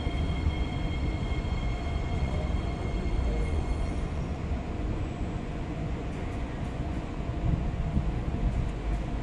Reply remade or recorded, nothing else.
remade